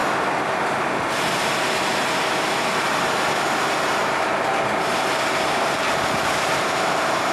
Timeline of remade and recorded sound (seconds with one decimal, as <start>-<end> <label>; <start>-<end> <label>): 0.0-2.4 recorded; 2.4-4.0 remade; 4.0-4.9 recorded; 4.9-7.3 remade